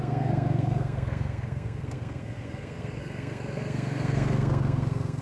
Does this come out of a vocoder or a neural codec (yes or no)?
yes